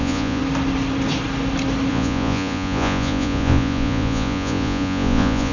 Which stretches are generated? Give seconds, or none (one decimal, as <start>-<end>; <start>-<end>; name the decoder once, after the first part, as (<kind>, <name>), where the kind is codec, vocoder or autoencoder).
0.0-0.4 (vocoder, Vocos); 1.9-5.5